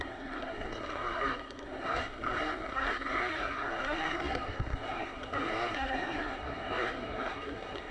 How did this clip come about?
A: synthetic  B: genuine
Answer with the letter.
A